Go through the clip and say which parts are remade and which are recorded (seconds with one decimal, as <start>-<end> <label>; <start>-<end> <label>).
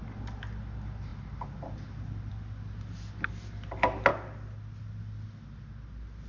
0.0-6.3 recorded